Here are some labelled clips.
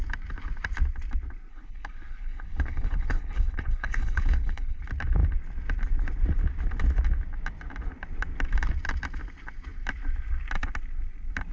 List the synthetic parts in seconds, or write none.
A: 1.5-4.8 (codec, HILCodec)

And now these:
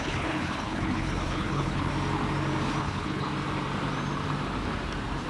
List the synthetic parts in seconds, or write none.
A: 0.0-1.9 (codec, HILCodec); 2.8-3.3

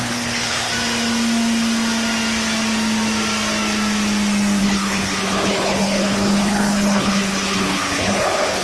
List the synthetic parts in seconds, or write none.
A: 0.0-0.7 (codec, HILCodec); 4.6-8.6

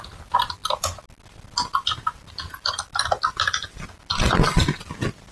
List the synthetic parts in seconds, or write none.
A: none